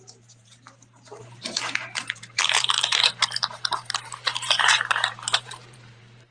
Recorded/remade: remade